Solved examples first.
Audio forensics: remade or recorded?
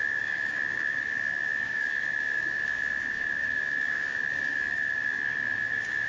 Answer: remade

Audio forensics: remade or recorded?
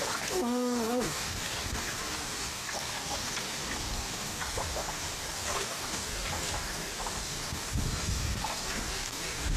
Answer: remade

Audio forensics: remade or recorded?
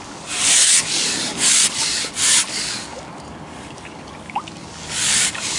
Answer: remade